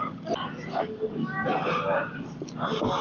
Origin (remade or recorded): recorded